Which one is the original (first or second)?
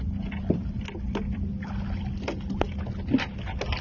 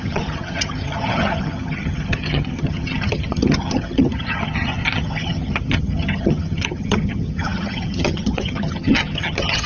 first